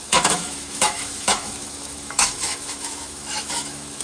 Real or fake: fake